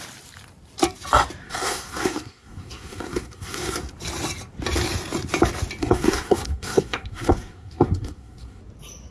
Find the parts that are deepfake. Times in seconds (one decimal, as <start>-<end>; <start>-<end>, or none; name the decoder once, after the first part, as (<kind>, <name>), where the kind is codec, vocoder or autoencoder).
1.4-3.9 (codec, SNAC); 5.8-8.6